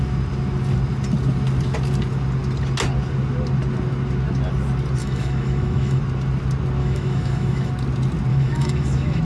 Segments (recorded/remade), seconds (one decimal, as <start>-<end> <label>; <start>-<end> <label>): 0.0-5.0 recorded; 5.0-6.0 remade; 6.0-6.8 recorded; 6.8-7.7 remade; 7.7-8.3 recorded; 8.3-9.2 remade